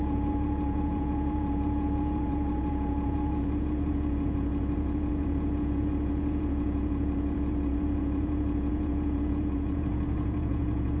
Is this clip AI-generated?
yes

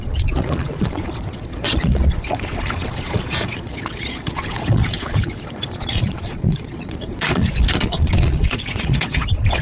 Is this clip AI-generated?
yes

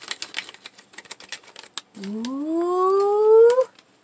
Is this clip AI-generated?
no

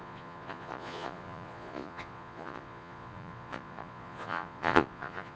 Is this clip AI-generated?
yes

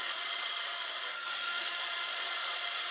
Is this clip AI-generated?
yes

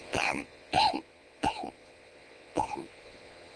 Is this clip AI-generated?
yes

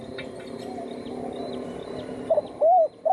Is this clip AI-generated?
no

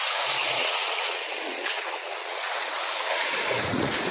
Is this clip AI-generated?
yes